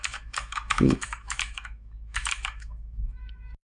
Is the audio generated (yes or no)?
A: yes